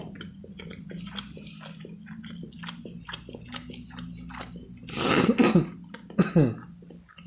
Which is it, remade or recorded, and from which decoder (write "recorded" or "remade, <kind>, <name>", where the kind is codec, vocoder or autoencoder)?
recorded